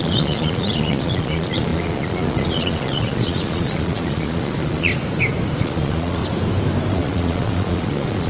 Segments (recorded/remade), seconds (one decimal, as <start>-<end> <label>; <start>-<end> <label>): 0.0-4.9 remade; 4.9-5.6 recorded; 5.6-6.2 remade; 6.2-6.9 recorded; 6.9-8.3 remade